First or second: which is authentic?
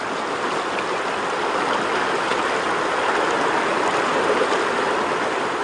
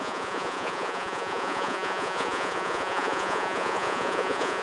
first